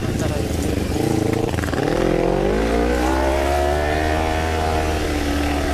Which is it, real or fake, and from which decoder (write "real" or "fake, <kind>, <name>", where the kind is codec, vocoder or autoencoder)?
real